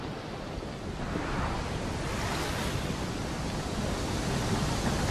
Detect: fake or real real